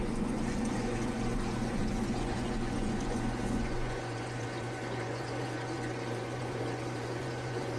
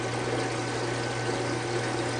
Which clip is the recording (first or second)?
second